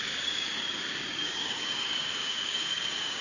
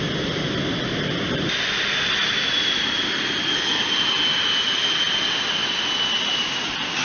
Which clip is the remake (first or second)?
first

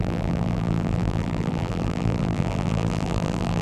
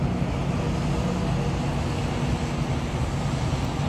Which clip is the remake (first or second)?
first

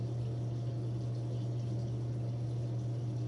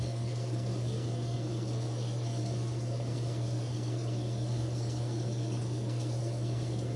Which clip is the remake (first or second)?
second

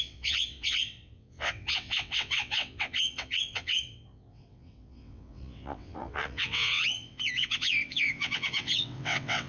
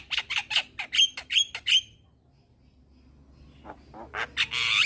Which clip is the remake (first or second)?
first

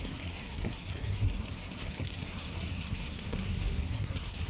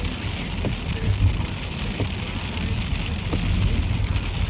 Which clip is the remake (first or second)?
first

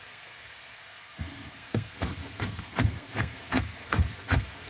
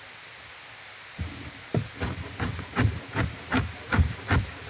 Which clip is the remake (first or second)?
first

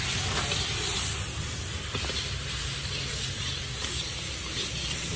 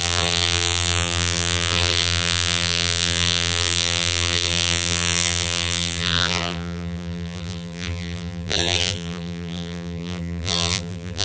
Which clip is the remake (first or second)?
second